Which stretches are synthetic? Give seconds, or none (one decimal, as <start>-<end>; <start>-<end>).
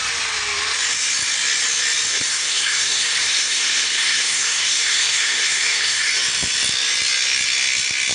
2.1-6.1